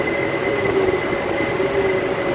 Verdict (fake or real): real